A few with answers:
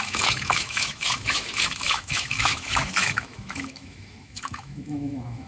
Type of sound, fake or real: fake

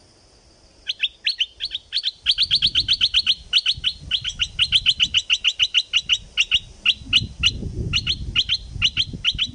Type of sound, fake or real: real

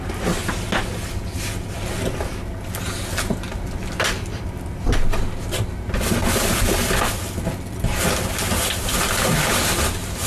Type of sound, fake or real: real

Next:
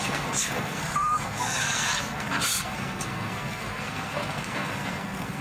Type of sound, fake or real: fake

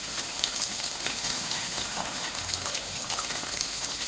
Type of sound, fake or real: fake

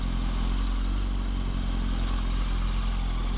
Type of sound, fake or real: real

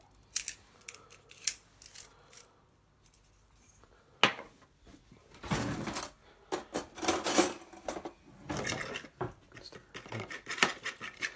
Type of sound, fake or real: real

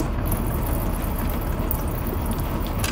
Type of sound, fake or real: real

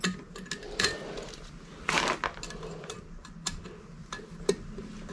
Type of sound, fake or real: real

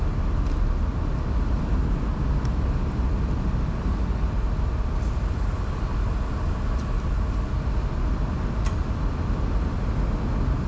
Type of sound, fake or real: real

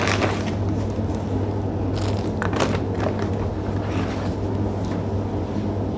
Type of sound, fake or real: real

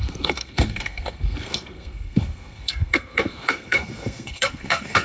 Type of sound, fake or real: fake